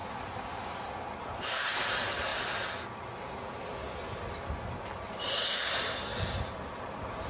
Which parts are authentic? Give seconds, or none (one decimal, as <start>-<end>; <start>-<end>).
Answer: 0.0-0.9; 2.3-5.2; 6.1-7.3